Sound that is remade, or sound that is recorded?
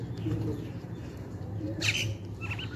recorded